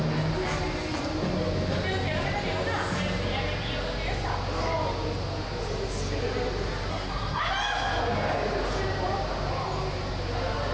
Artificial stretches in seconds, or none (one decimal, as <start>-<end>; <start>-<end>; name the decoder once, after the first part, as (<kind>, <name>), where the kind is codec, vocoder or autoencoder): 6.9-7.4 (codec, SNAC)